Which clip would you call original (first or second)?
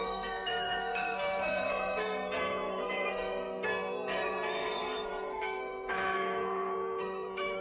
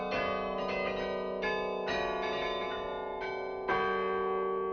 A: second